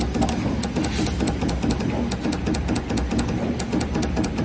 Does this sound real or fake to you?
real